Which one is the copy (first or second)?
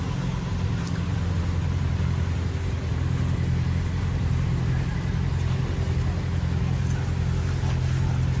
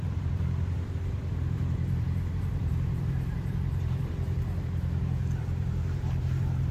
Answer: second